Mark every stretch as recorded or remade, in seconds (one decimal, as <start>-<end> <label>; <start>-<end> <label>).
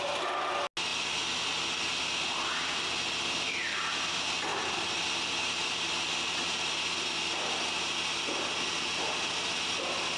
0.0-4.5 recorded; 4.5-7.9 remade; 7.9-10.2 recorded